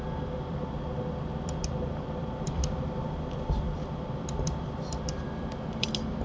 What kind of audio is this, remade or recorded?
remade